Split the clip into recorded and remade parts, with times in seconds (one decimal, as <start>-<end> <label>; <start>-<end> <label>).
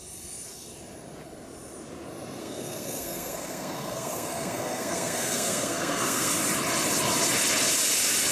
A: 0.0-2.4 recorded; 2.4-6.3 remade; 6.3-8.3 recorded